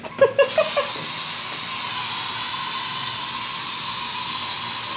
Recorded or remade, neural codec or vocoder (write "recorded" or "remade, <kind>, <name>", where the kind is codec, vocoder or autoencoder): recorded